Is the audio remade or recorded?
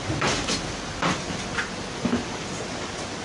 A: recorded